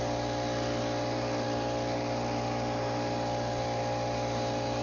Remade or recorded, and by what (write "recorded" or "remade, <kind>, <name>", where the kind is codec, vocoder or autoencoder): recorded